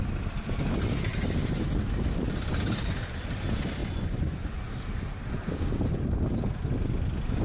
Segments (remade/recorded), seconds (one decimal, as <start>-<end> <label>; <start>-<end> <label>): 0.0-3.8 recorded; 3.8-4.7 remade; 4.7-7.4 recorded